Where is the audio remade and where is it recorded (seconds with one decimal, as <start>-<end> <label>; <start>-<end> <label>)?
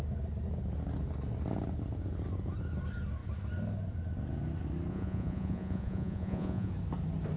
0.0-4.9 recorded; 4.9-6.7 remade; 6.7-7.4 recorded